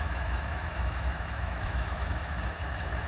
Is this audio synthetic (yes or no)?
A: yes